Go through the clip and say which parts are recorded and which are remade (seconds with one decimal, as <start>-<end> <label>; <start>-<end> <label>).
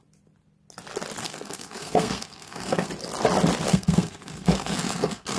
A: 0.0-1.2 recorded; 1.2-2.9 remade; 2.9-3.7 recorded; 3.7-5.4 remade